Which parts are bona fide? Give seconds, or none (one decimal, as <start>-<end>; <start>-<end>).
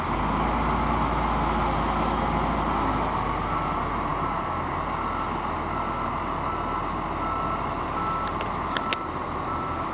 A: 0.0-9.9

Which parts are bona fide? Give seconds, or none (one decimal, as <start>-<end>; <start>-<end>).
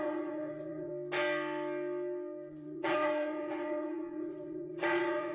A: 0.9-2.5